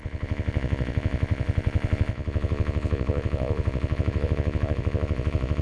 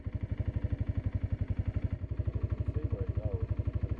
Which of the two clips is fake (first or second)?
first